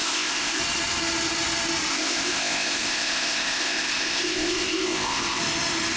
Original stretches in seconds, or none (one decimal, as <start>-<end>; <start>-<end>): 0.6-1.9; 5.4-6.0